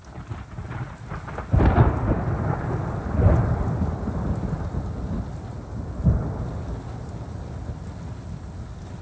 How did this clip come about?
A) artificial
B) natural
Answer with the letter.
B